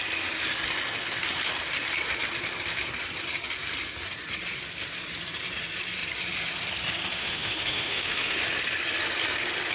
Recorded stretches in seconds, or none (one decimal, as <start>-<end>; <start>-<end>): 0.0-7.2; 8.4-9.7